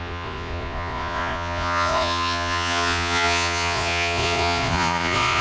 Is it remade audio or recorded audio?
remade